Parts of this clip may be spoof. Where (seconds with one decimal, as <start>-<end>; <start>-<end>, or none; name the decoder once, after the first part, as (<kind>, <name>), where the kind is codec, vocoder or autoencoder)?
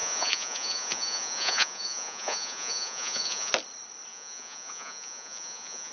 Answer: 0.0-3.5 (vocoder, Vocos); 4.1-5.9